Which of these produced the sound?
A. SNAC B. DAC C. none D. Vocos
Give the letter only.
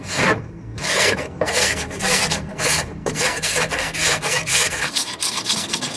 A